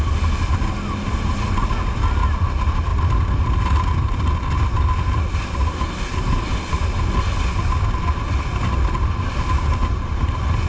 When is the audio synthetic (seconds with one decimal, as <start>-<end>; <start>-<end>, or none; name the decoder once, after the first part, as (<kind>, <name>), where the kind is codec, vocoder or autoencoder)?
8.5-9.1 (vocoder, BigVGAN v2)